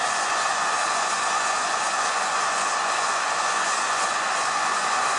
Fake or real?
fake